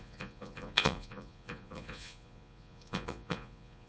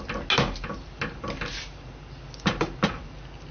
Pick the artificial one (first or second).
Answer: first